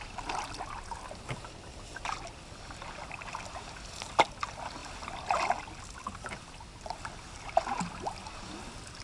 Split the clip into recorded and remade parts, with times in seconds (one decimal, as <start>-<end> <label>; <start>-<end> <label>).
0.0-9.0 recorded